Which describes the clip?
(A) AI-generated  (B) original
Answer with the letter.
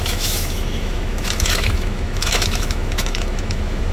A